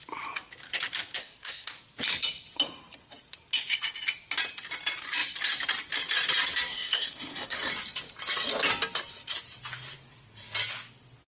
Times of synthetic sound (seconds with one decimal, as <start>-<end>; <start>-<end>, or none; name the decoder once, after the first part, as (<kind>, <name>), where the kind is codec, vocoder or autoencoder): 1.2-1.7 (codec, SNAC); 6.7-7.7